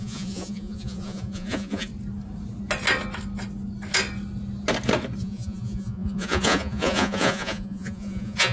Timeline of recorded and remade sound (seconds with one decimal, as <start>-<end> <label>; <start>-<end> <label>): 0.0-1.9 remade; 1.9-5.2 recorded; 5.2-8.5 remade